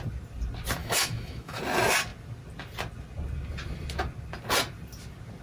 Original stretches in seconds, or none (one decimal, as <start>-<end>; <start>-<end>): 0.0-0.8; 1.6-5.4